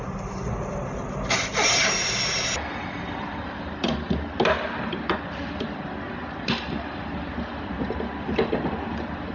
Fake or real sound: real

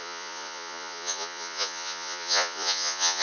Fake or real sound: fake